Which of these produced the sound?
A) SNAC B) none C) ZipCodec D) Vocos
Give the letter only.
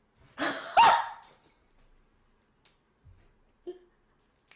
B